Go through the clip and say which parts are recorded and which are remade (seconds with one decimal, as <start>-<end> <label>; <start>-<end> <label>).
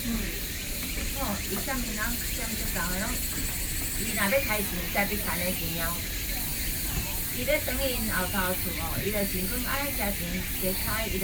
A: 0.0-11.2 recorded